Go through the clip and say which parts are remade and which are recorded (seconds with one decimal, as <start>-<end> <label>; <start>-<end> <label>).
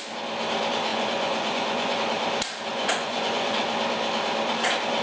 0.0-0.9 recorded; 0.9-2.0 remade; 2.0-2.7 recorded; 2.7-3.6 remade; 3.6-5.0 recorded